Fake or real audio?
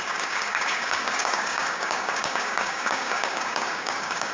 fake